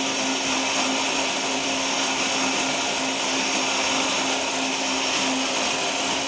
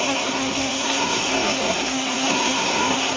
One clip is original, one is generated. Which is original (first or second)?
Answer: first